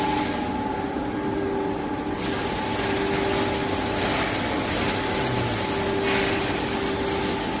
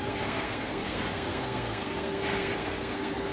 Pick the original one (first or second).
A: first